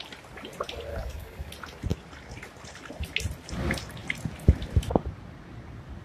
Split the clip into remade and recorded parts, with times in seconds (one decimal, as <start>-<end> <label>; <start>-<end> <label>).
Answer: 0.0-0.9 recorded; 0.9-1.5 remade; 1.5-6.0 recorded

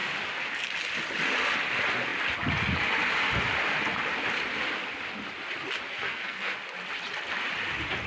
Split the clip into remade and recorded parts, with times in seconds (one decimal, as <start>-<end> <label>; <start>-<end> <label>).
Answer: 0.0-5.9 recorded; 5.9-6.5 remade; 6.5-8.1 recorded

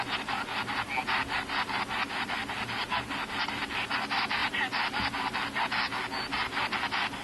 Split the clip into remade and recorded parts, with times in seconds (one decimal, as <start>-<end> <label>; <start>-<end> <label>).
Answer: 0.0-7.2 recorded

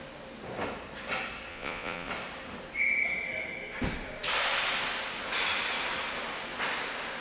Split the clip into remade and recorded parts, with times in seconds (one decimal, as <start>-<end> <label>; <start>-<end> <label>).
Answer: 0.0-1.5 recorded; 1.5-2.1 remade; 2.1-7.2 recorded

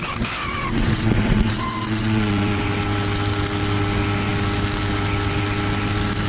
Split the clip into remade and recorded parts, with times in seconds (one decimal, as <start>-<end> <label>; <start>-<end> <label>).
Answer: 0.0-0.4 recorded; 0.4-2.7 remade; 2.7-6.3 recorded